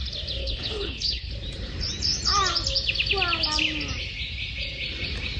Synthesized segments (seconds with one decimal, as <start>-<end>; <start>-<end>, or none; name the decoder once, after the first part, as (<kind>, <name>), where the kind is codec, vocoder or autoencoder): 0.4-1.3 (codec, HILCodec)